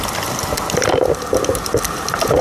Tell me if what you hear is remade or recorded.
recorded